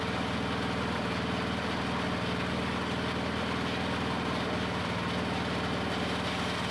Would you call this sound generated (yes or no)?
no